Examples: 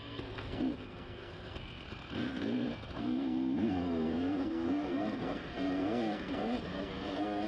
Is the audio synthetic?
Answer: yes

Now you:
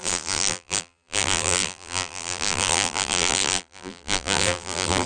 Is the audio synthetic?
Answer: yes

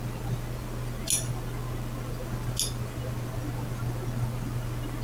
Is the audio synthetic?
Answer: no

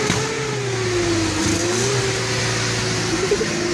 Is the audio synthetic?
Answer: no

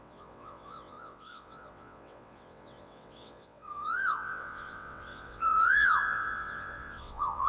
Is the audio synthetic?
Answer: yes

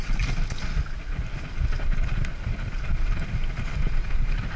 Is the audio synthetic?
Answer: no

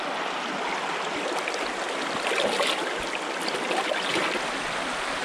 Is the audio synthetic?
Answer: no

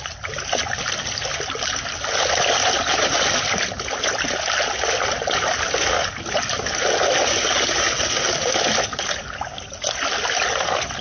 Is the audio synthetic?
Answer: no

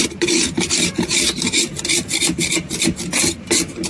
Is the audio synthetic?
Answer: no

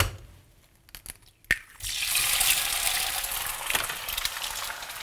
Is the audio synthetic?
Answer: no